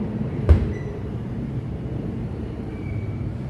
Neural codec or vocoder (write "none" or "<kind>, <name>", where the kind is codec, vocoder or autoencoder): vocoder, BigVGAN v2